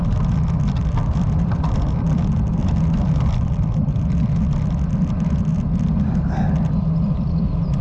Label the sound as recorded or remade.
recorded